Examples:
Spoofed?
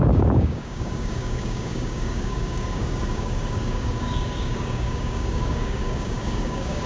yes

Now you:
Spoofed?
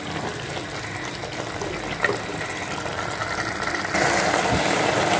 no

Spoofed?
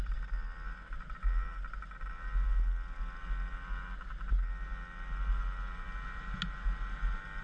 no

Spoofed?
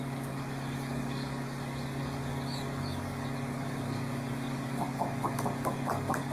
yes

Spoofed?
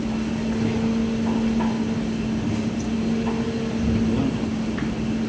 no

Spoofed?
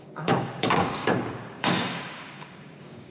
yes